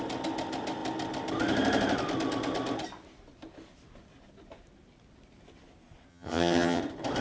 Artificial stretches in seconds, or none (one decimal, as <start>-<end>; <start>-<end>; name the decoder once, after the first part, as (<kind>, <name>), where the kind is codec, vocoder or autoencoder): 6.1-6.8 (vocoder, HiFi-GAN)